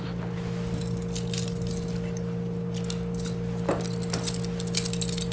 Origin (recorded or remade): recorded